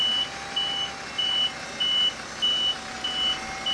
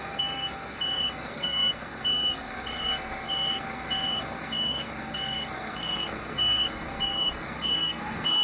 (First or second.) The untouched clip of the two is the first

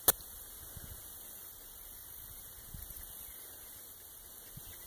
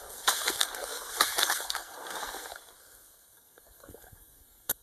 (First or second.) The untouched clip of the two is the first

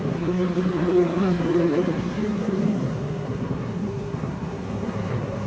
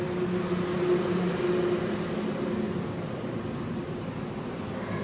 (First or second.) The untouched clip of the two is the second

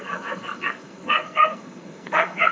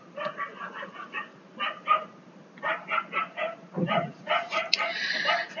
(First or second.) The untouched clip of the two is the second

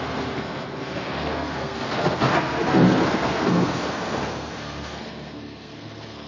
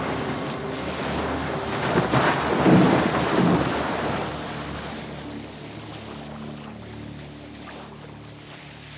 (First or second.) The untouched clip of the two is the second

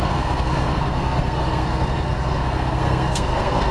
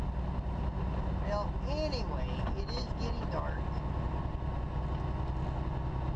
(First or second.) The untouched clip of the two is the second